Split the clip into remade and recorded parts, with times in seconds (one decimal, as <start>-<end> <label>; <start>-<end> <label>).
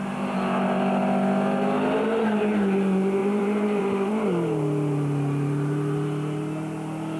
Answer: 0.0-3.2 recorded; 3.2-4.1 remade; 4.1-7.2 recorded